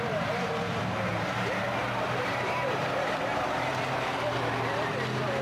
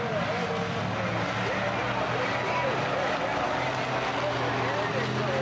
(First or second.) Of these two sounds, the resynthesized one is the first